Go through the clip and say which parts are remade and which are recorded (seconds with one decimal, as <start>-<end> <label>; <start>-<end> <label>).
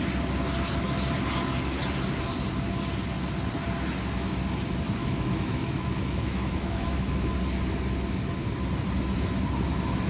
0.0-5.0 recorded; 5.0-7.3 remade; 7.3-10.1 recorded